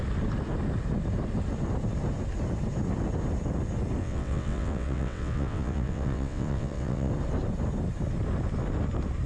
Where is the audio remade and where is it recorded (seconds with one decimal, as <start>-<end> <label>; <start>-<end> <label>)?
0.0-4.0 recorded; 4.0-7.1 remade; 7.1-9.3 recorded